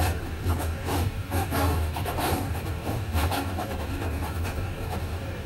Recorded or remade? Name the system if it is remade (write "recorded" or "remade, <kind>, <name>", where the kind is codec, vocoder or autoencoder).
remade, codec, DAC